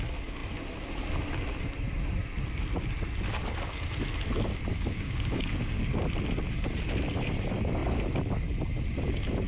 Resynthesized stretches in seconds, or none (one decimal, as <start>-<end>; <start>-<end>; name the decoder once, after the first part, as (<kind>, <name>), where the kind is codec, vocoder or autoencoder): 4.7-5.8 (codec, DAC)